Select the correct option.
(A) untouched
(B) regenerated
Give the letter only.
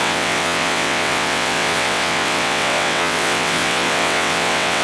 B